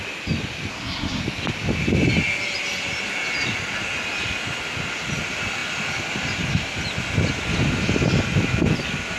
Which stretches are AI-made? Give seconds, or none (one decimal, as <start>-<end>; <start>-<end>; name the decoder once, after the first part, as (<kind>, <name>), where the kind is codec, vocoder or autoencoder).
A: 0.7-1.2 (codec, SNAC)